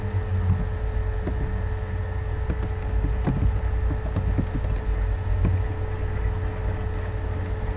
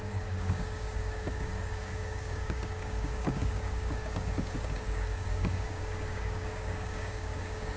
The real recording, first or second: first